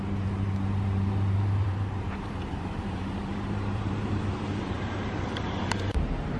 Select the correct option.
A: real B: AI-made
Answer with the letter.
B